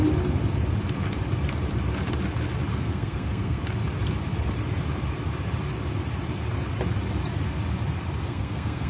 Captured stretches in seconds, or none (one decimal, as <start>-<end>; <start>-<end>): 0.0-2.7; 3.6-8.2